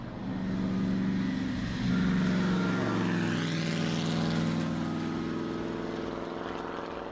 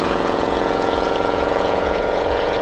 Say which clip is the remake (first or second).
second